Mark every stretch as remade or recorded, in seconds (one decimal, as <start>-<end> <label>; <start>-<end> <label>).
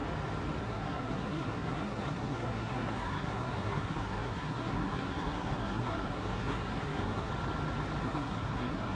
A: 0.0-0.6 recorded; 0.6-7.3 remade; 7.3-8.0 recorded; 8.0-9.0 remade